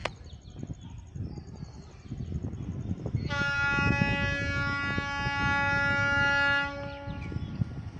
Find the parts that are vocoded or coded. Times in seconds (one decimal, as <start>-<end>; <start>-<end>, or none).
none